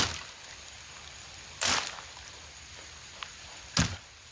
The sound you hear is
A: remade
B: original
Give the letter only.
B